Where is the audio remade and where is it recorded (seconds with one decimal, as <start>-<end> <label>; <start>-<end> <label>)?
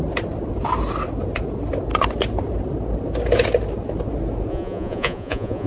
0.0-4.5 recorded; 4.5-5.7 remade